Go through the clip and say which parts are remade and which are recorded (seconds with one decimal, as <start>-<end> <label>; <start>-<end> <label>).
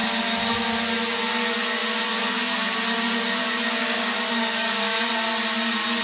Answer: 0.0-3.8 recorded; 3.8-5.1 remade; 5.1-6.0 recorded